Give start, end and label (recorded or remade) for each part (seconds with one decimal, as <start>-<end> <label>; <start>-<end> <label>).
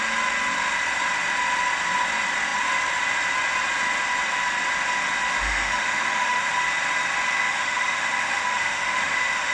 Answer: 0.0-5.4 recorded; 5.4-6.5 remade; 6.5-7.3 recorded; 7.3-9.5 remade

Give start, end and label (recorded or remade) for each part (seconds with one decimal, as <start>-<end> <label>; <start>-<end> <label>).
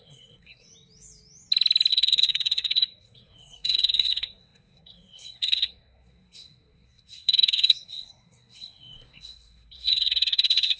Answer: 0.0-0.7 remade; 0.7-1.9 recorded; 1.9-10.8 remade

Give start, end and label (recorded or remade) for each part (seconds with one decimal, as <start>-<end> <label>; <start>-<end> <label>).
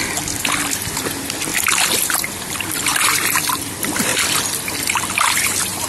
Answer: 0.0-0.6 recorded; 0.6-1.5 remade; 1.5-2.4 recorded; 2.4-2.9 remade; 2.9-3.6 recorded; 3.6-4.1 remade; 4.1-5.4 recorded; 5.4-5.9 remade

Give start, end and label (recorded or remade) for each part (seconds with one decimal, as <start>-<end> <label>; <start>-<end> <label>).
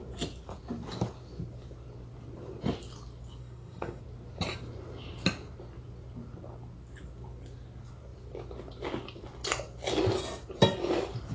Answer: 0.0-3.4 recorded; 3.4-4.0 remade; 4.0-11.3 recorded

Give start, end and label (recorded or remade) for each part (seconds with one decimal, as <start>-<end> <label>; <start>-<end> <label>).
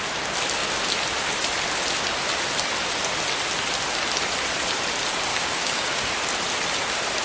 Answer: 0.0-5.3 recorded; 5.3-6.1 remade; 6.1-7.2 recorded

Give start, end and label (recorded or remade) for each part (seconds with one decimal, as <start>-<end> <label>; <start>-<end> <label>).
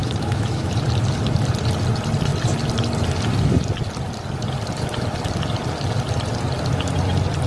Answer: 0.0-0.7 remade; 0.7-7.5 recorded